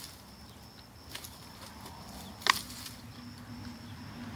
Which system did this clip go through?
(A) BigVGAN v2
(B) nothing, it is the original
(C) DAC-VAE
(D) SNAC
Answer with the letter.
B